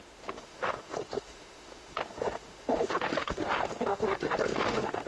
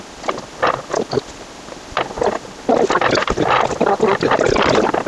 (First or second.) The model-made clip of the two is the first